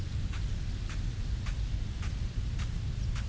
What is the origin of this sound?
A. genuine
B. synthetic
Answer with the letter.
A